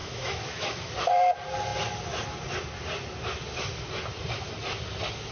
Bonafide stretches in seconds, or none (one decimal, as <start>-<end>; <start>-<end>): 0.9-5.3